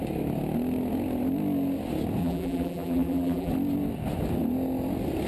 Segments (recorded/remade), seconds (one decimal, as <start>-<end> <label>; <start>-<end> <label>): 0.0-2.2 recorded; 2.2-3.5 remade; 3.5-5.3 recorded